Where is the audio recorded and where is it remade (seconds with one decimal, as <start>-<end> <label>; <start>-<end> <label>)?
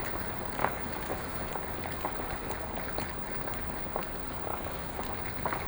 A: 0.0-0.6 recorded; 0.6-1.5 remade; 1.5-4.5 recorded; 4.5-5.0 remade; 5.0-5.7 recorded